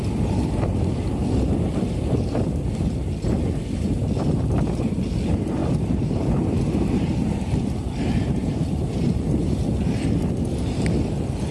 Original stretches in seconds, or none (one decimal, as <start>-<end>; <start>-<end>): 0.0-5.6; 9.6-11.5